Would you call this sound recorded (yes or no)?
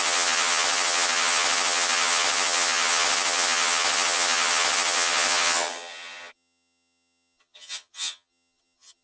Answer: no